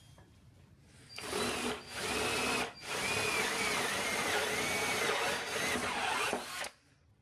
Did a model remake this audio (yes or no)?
no